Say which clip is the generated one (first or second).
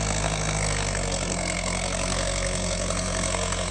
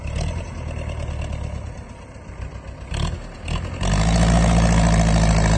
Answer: first